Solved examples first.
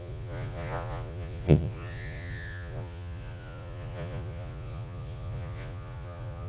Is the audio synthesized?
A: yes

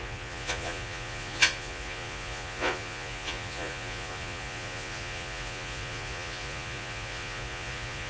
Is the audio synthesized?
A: yes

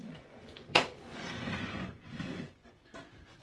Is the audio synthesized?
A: yes